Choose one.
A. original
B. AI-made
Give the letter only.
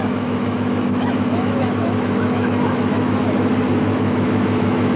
B